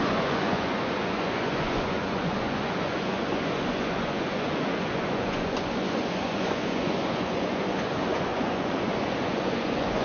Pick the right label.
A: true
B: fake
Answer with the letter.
B